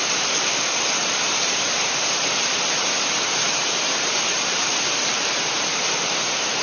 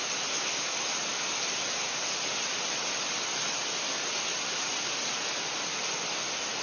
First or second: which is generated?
first